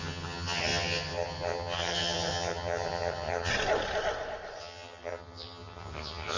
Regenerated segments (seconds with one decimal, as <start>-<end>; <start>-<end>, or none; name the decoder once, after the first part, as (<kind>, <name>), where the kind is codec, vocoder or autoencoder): 0.0-3.5 (vocoder, HiFi-GAN); 4.6-6.4